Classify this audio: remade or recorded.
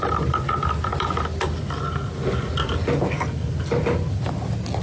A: recorded